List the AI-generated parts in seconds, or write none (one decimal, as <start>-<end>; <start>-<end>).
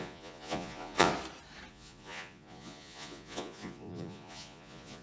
0.0-1.1; 1.7-5.0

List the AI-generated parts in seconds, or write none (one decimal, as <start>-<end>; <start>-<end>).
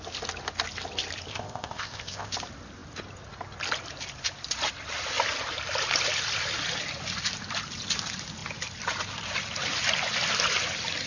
1.3-2.3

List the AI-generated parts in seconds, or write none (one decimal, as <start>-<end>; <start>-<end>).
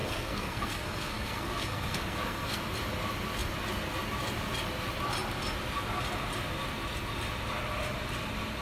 0.0-2.6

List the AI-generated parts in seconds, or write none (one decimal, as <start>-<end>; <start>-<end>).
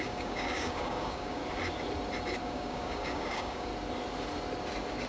0.0-1.4; 2.4-3.7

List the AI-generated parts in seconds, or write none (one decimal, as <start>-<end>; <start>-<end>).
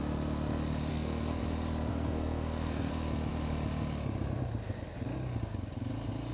0.9-1.4; 1.9-2.9